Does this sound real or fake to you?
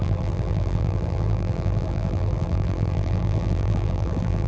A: fake